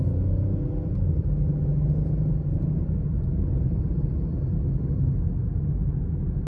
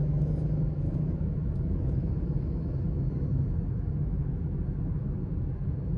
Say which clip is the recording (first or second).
first